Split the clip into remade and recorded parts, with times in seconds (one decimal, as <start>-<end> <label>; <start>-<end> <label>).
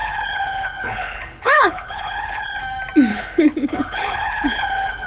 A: 0.0-2.6 remade; 2.6-3.1 recorded; 3.1-5.1 remade